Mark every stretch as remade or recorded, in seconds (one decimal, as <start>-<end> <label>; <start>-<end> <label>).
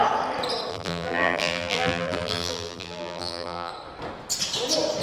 0.0-0.7 recorded; 0.7-3.7 remade; 3.7-5.0 recorded